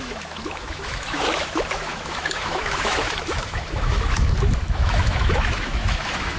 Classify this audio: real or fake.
fake